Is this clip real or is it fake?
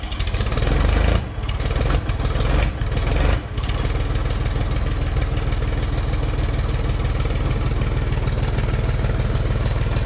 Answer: real